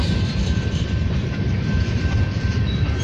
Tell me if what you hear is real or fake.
fake